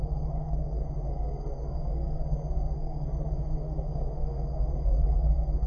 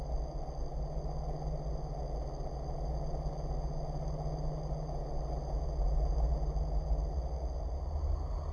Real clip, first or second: second